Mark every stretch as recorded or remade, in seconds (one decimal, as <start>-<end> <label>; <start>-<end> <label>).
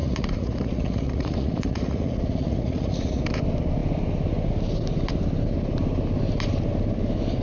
0.0-3.2 remade; 3.2-7.4 recorded